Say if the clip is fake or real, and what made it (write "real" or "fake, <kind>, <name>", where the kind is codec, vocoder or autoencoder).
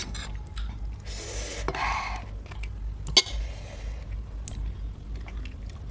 real